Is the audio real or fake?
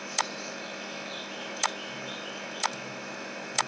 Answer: fake